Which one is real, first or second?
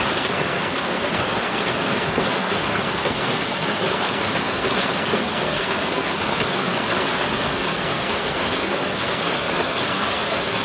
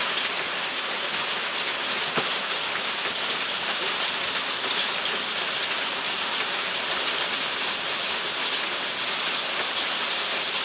second